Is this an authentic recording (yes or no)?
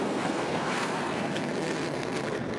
no